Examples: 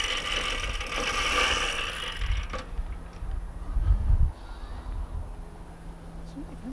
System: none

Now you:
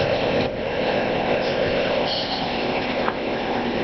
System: codec, ZipCodec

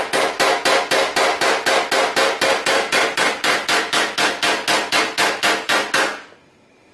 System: none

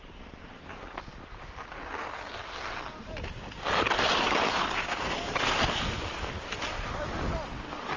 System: none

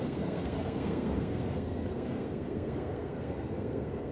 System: codec, SNAC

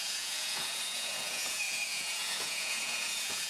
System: vocoder, Vocos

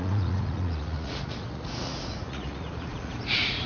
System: vocoder, Vocos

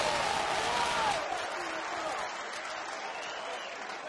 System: none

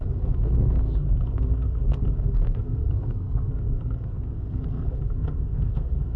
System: codec, SNAC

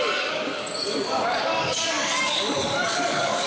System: codec, DAC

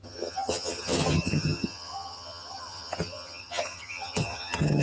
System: vocoder, HiFi-GAN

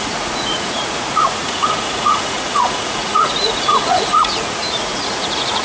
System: vocoder, Vocos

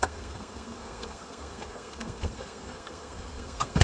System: codec, SNAC